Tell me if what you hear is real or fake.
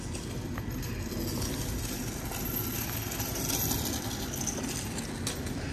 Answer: real